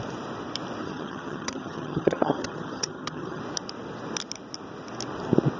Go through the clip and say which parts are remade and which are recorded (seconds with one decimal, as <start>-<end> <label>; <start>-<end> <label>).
0.0-0.8 recorded; 0.8-3.4 remade; 3.4-5.6 recorded